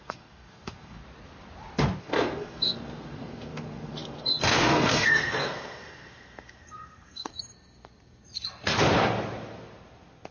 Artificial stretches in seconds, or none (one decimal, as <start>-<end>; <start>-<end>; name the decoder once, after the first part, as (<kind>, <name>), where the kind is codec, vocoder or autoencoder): 0.0-1.0 (codec, SNAC); 2.0-7.3